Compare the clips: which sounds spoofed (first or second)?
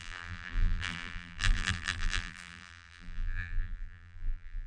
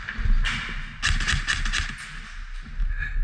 first